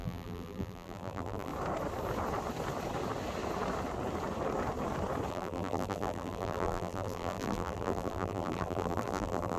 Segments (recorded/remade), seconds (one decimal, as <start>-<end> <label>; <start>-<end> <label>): 0.0-1.5 remade; 1.5-5.3 recorded; 5.3-9.6 remade

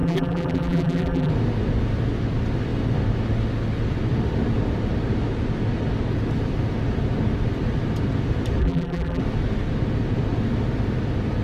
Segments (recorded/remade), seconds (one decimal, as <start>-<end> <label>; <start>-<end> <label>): 0.0-1.3 remade; 1.3-8.6 recorded; 8.6-9.2 remade; 9.2-11.4 recorded

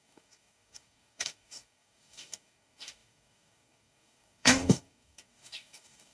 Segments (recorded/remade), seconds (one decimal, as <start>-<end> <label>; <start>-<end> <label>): 0.0-6.1 remade

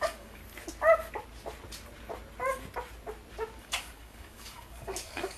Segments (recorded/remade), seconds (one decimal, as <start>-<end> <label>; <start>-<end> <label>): 0.0-0.4 remade; 0.4-3.6 recorded; 3.6-5.4 remade

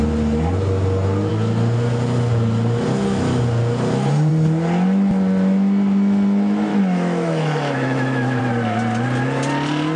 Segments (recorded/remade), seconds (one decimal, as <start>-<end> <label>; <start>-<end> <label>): 0.0-6.7 recorded; 6.7-8.4 remade; 8.4-10.0 recorded